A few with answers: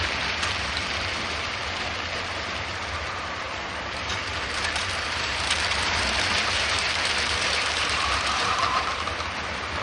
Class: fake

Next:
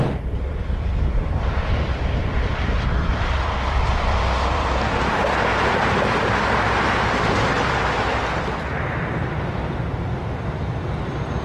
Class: fake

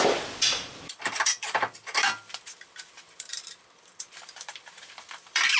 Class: fake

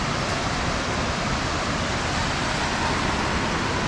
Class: fake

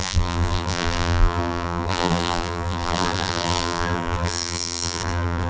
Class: fake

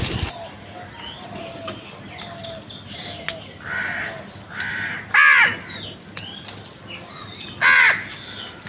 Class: real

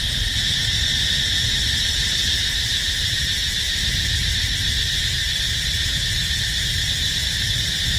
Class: fake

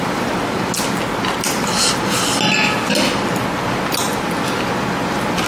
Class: real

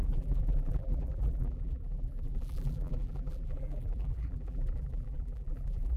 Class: fake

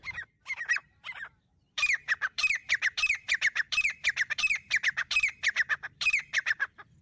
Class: fake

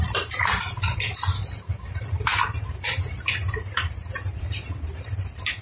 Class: fake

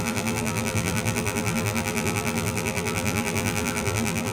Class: fake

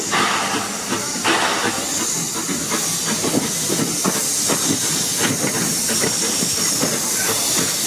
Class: real